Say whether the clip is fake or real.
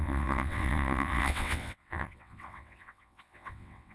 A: fake